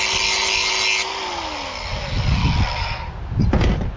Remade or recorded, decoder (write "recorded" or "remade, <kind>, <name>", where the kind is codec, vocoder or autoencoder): recorded